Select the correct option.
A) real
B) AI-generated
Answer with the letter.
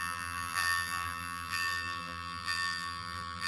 B